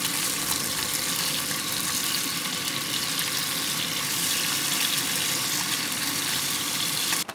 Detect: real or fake real